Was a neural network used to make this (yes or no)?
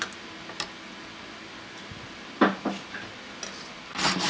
no